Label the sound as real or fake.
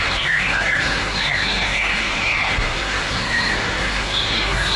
fake